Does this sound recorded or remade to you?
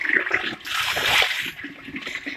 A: recorded